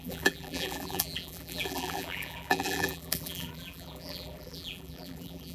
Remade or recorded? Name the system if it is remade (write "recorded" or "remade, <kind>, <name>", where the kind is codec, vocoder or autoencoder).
remade, vocoder, BigVGAN v2